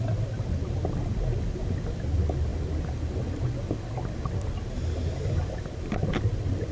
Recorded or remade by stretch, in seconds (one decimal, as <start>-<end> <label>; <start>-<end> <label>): 0.0-6.7 recorded